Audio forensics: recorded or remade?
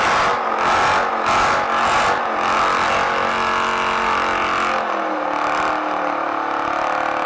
recorded